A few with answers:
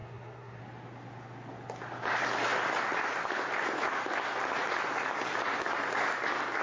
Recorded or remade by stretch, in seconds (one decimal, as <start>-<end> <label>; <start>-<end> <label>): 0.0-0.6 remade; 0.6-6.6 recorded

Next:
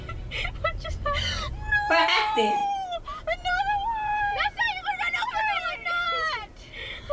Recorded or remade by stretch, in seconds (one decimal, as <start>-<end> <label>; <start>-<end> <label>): 0.0-2.6 remade; 2.6-3.2 recorded; 3.2-7.1 remade

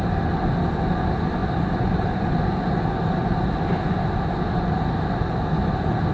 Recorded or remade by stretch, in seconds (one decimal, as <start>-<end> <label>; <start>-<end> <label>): 0.0-6.1 recorded

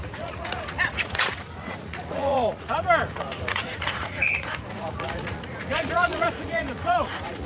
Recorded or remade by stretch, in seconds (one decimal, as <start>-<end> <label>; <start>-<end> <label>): 0.0-7.5 remade

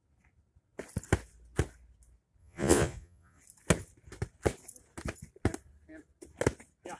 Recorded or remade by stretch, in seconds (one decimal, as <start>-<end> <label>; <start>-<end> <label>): 0.0-2.4 recorded; 2.4-3.4 remade; 3.4-7.0 recorded

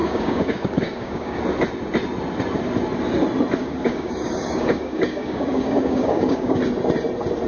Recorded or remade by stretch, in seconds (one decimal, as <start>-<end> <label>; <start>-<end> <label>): 0.0-1.4 remade; 1.4-3.6 recorded; 3.6-6.6 remade; 6.6-7.5 recorded

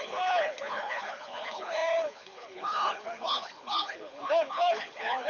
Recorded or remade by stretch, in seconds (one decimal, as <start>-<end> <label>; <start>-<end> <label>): 0.0-5.3 remade